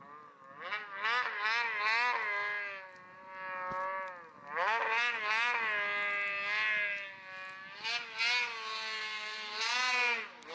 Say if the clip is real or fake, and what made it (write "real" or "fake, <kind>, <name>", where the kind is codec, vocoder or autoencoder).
real